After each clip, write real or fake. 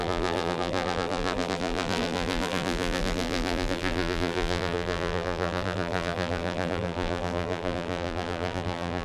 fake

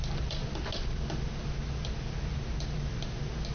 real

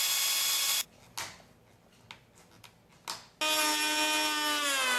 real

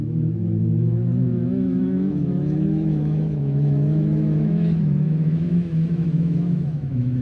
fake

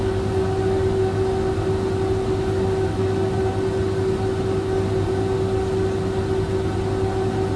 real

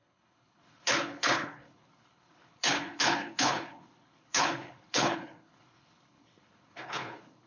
fake